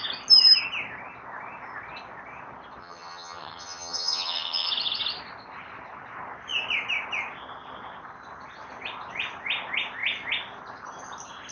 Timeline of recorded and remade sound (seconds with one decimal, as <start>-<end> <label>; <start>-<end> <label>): 0.0-2.8 recorded; 2.8-4.7 remade; 4.7-11.5 recorded